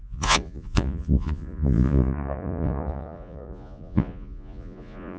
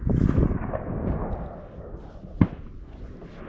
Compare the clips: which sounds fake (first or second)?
first